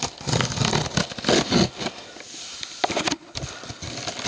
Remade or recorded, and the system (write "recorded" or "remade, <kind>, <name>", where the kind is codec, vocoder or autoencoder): recorded